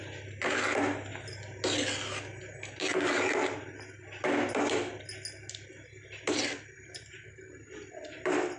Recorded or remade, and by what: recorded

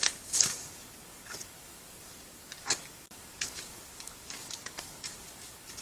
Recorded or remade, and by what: remade, codec, DAC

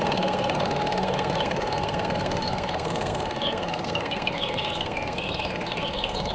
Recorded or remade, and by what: remade, codec, SNAC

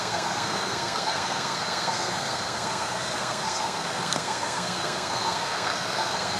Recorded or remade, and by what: remade, codec, SNAC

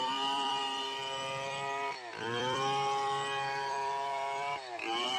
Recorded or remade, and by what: remade, vocoder, BigVGAN v2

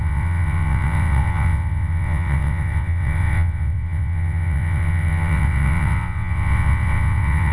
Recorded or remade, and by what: remade, vocoder, WaveNeXt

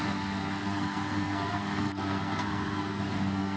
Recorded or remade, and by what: remade, codec, SNAC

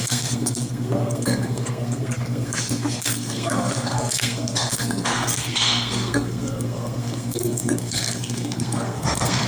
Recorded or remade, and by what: remade, codec, SNAC